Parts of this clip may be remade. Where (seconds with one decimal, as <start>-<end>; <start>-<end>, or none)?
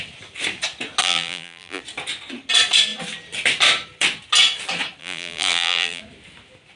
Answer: 1.0-1.8; 5.0-6.0